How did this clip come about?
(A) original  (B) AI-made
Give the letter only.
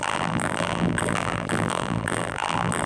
B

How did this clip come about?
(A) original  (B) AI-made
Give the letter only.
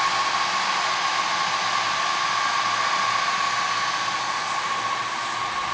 A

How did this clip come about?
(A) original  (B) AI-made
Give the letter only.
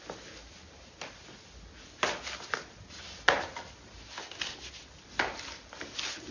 A